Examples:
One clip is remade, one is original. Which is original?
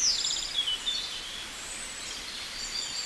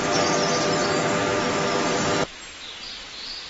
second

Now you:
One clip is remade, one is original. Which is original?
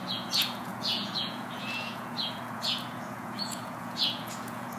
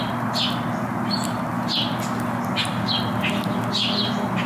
second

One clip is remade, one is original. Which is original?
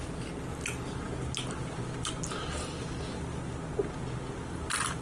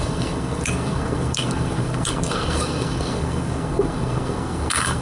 first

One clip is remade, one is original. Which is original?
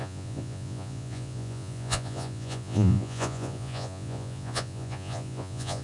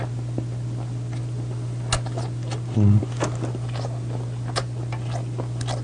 second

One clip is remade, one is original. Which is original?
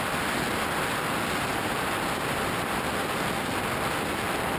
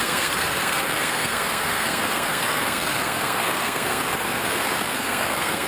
first